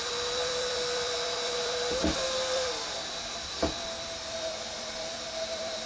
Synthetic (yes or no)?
yes